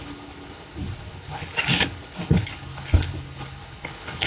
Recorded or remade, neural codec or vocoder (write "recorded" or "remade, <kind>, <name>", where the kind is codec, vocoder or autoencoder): remade, codec, HILCodec